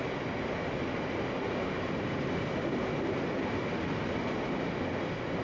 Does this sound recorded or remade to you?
recorded